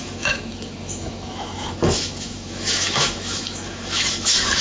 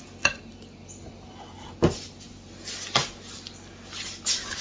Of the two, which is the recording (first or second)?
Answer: second